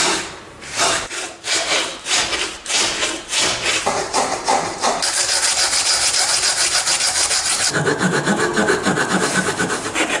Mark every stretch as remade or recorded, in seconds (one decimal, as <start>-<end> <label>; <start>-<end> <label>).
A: 0.0-1.9 remade; 1.9-2.5 recorded; 2.5-8.5 remade; 8.5-9.2 recorded; 9.2-10.2 remade